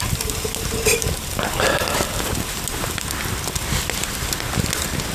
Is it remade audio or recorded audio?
recorded